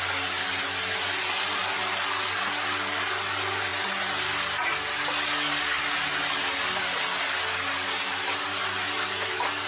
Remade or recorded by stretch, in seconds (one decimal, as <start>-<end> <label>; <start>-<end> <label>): 0.0-9.7 recorded